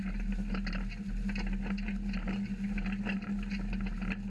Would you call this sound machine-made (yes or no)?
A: no